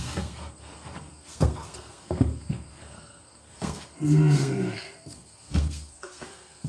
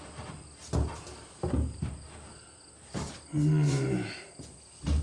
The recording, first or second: second